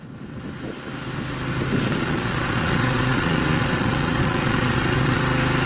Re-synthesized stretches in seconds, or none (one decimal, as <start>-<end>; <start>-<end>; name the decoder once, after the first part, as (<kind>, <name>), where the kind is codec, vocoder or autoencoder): 1.8-5.2 (vocoder, Vocos)